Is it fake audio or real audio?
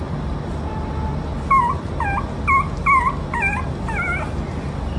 real